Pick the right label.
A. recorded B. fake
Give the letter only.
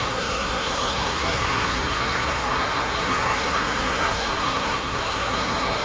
B